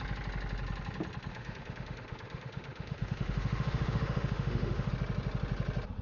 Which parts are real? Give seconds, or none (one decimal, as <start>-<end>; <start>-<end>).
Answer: 0.0-1.3; 4.9-6.0